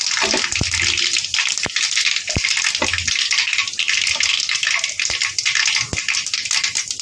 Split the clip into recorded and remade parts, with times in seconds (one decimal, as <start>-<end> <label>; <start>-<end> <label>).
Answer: 0.0-7.0 recorded